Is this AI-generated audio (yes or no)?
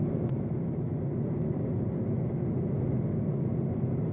no